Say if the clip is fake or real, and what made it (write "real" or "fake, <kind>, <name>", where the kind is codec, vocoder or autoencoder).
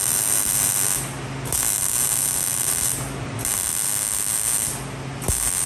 real